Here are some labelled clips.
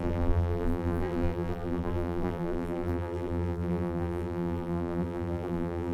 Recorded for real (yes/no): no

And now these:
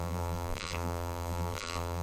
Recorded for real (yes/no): no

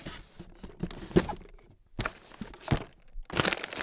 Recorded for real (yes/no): yes